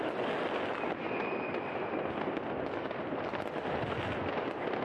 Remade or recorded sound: recorded